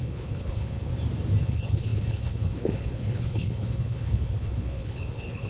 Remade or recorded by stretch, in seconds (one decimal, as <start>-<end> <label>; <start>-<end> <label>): 0.0-0.9 remade; 0.9-1.4 recorded; 1.4-5.5 remade